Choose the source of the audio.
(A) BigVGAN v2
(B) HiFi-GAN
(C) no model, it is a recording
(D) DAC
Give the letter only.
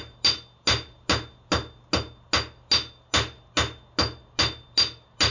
C